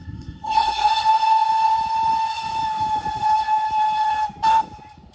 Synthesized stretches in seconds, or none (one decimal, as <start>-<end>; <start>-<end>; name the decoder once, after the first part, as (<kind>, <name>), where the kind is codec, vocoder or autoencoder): 0.0-0.9 (codec, SNAC)